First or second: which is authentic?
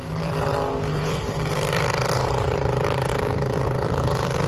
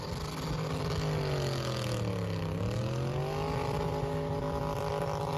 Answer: second